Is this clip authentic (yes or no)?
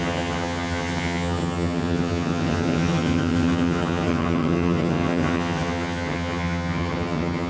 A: no